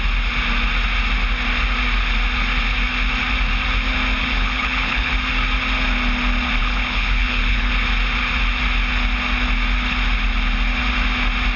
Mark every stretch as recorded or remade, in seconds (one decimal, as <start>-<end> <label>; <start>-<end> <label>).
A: 0.0-4.2 recorded; 4.2-5.1 remade; 5.1-6.6 recorded; 6.6-7.7 remade; 7.7-11.6 recorded

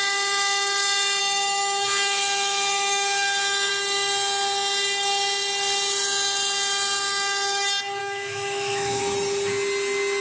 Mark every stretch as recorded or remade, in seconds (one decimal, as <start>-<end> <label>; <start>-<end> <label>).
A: 0.0-1.2 recorded; 1.2-3.7 remade; 3.7-8.0 recorded; 8.0-9.0 remade; 9.0-10.2 recorded